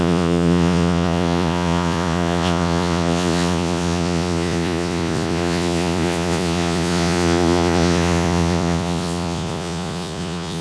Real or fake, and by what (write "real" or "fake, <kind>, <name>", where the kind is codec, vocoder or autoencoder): fake, vocoder, Vocos